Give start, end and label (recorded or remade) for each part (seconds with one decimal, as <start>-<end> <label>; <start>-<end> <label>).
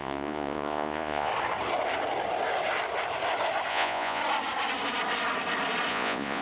0.0-1.3 remade; 1.3-3.7 recorded; 3.7-4.2 remade; 4.2-5.9 recorded; 5.9-6.4 remade